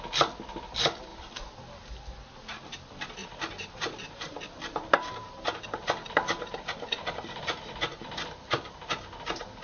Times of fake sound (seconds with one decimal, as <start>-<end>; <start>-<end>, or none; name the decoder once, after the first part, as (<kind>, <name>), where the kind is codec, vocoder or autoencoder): 1.1-1.9 (vocoder, BigVGAN v2); 3.2-7.6